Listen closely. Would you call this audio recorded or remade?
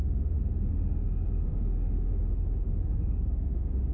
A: remade